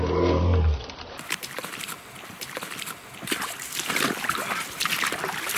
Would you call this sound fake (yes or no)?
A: no